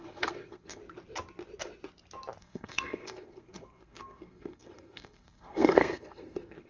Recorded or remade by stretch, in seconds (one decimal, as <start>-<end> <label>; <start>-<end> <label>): 0.0-0.8 remade; 0.8-2.4 recorded; 2.4-6.7 remade